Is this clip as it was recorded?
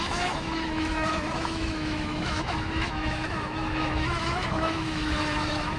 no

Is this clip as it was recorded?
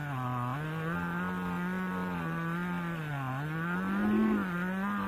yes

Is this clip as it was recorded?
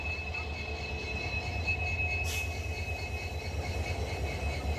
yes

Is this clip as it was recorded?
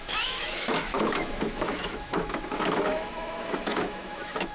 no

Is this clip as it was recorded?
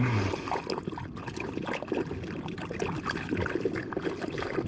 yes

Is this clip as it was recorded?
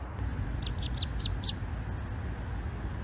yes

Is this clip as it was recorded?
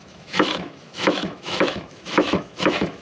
no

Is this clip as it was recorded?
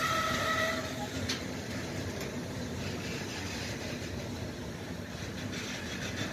yes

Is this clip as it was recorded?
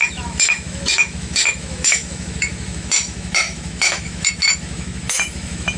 no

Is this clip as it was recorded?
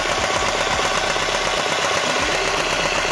yes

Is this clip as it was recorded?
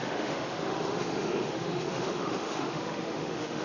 no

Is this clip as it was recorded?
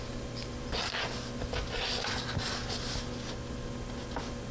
yes